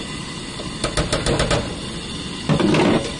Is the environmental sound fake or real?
real